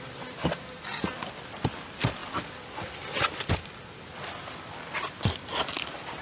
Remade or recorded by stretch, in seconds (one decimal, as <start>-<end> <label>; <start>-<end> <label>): 0.0-6.2 recorded